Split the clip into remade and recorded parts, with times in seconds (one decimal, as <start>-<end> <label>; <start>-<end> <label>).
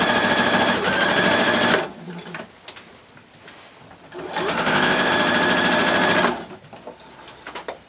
0.0-4.6 recorded; 4.6-5.1 remade; 5.1-7.9 recorded